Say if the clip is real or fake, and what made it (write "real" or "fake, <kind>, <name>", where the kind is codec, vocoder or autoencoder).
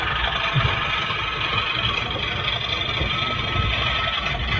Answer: real